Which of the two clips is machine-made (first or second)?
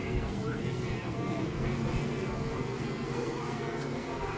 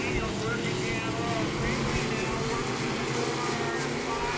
first